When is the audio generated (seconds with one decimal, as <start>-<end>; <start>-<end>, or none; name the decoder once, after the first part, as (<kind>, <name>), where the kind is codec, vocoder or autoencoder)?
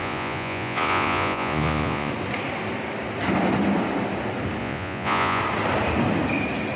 0.0-2.1 (vocoder, Vocos); 4.6-5.4